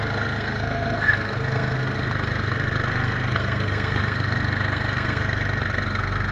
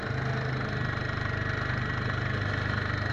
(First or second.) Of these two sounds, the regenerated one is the first